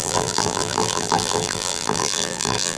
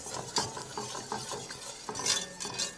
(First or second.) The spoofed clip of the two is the first